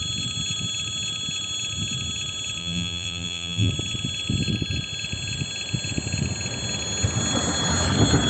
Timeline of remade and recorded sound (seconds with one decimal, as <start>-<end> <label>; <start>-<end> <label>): 0.0-2.6 recorded; 2.6-3.7 remade; 3.7-8.3 recorded